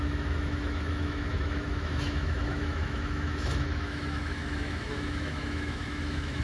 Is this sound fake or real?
fake